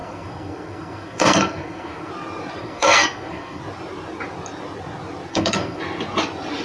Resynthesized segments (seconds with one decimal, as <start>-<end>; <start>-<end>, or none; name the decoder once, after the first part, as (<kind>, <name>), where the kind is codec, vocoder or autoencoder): 0.0-2.1 (codec, SNAC); 2.6-3.6; 5.3-5.8